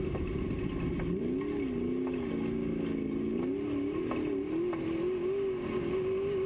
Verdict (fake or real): real